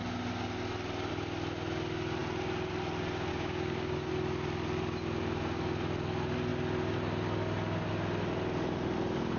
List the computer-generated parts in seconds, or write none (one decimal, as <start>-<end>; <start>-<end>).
3.3-4.1